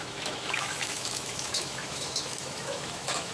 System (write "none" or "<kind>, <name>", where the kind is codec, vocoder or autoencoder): autoencoder, DAC-VAE